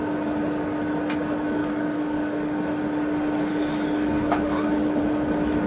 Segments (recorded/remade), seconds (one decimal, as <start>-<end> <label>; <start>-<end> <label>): 0.0-1.6 recorded; 1.6-2.6 remade; 2.6-3.5 recorded; 3.5-5.0 remade; 5.0-5.7 recorded